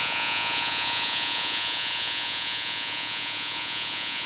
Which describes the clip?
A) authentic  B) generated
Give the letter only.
B